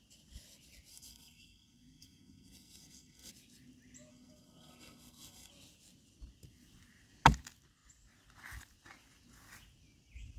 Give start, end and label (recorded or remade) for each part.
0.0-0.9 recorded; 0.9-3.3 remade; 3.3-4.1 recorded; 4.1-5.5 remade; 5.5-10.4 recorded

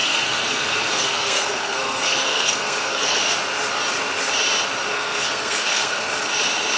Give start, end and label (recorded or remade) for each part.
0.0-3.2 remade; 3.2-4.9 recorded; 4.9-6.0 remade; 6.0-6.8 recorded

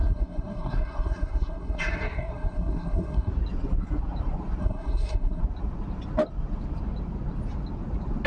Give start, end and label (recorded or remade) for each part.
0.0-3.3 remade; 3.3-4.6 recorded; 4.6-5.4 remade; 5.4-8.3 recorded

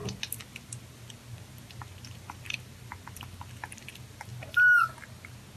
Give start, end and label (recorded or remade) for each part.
0.0-5.6 recorded